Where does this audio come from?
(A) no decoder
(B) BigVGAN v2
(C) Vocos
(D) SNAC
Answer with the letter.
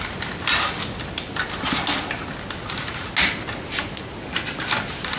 A